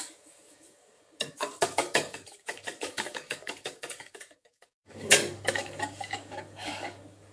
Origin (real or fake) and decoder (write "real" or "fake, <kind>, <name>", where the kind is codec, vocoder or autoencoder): fake, codec, DAC